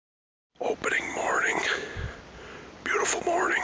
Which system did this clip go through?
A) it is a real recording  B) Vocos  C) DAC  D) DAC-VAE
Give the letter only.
A